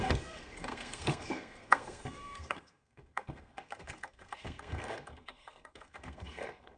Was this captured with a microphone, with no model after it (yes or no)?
no